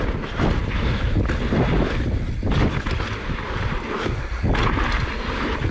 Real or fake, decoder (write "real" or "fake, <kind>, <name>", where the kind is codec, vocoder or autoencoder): real